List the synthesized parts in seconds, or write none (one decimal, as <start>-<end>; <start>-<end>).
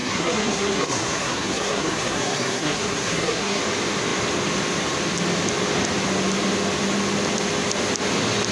0.0-3.6